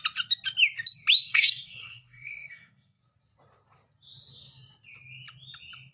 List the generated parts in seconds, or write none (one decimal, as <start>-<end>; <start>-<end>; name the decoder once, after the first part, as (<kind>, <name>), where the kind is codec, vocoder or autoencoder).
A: 1.3-3.0 (codec, SNAC)